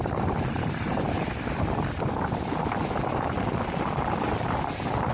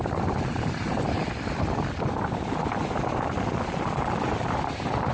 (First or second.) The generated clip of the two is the first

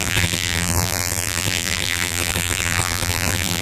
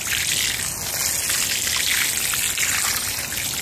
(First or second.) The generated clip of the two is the first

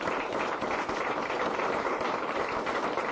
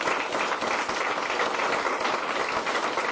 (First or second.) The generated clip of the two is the first